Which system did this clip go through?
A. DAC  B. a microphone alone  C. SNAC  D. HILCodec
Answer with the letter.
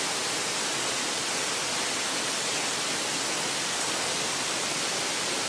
B